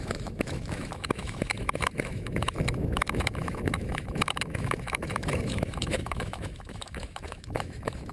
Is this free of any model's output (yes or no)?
no